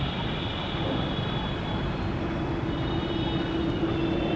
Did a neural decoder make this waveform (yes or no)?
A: no